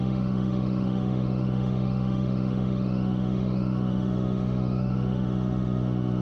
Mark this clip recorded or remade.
remade